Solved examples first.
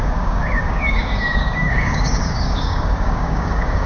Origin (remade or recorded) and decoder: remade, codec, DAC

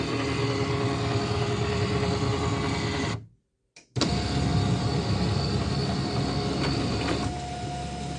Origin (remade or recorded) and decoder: recorded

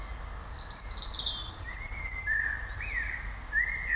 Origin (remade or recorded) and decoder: recorded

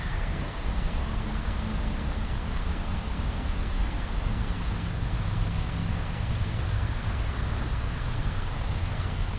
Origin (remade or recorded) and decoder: remade, codec, SNAC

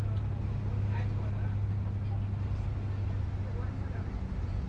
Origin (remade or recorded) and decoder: recorded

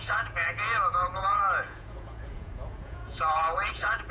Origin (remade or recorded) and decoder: remade, vocoder, Vocos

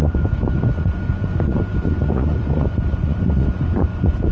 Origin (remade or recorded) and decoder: remade, vocoder, Vocos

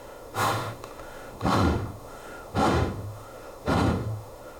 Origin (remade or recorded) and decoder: remade, autoencoder, DAC-VAE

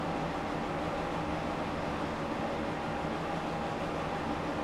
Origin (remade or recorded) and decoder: recorded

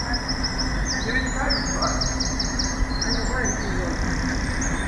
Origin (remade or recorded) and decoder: recorded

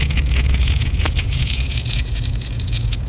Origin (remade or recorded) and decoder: remade, vocoder, Vocos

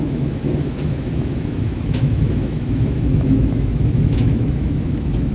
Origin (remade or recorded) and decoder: remade, autoencoder, DAC-VAE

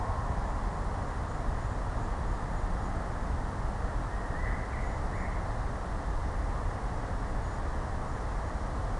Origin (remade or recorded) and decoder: recorded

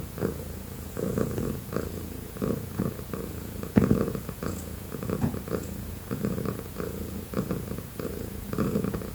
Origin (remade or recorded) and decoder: remade, vocoder, Vocos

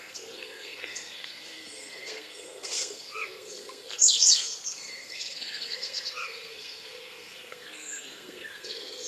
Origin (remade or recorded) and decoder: remade, codec, SNAC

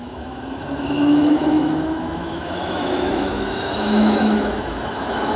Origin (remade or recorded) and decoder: remade, autoencoder, DAC-VAE